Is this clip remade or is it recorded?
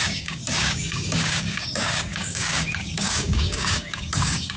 remade